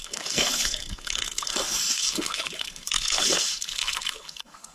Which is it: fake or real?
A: fake